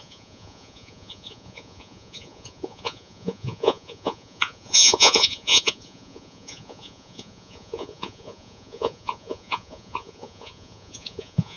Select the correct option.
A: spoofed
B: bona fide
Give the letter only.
A